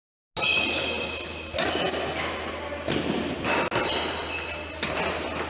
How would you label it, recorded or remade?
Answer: recorded